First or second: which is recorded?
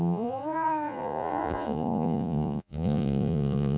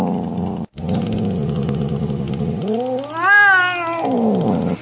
second